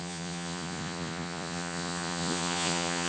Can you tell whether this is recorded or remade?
remade